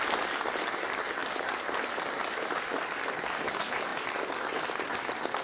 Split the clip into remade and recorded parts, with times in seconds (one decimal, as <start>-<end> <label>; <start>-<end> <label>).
0.0-5.4 recorded